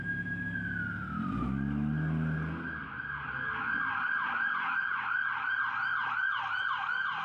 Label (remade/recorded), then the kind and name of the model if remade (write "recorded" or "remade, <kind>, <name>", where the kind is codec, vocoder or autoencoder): recorded